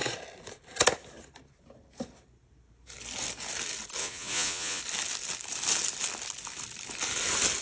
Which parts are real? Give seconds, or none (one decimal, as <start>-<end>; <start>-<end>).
0.0-4.0; 4.8-7.6